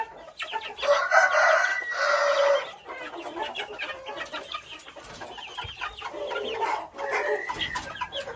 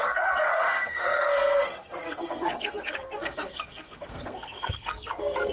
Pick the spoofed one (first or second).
second